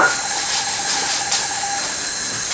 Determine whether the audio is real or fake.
real